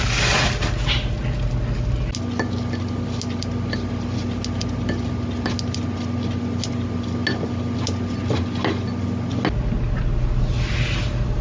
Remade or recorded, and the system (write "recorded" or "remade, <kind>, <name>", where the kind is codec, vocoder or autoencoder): recorded